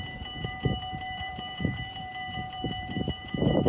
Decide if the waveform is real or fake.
fake